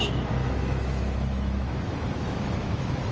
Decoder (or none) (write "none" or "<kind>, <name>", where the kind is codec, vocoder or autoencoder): autoencoder, DAC-VAE